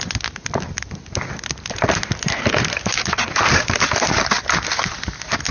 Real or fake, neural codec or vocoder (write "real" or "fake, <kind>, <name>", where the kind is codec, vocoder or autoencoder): real